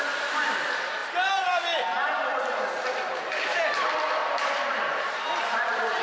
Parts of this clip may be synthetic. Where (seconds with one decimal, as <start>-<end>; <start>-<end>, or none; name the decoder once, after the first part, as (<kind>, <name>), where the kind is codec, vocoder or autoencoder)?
4.2-6.0 (vocoder, BigVGAN v2)